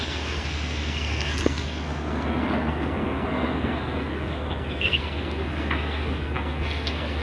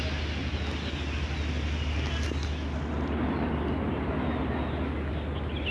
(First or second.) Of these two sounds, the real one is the second